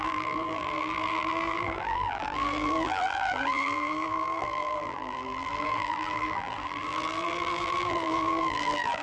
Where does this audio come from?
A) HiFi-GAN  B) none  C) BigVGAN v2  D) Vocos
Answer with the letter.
C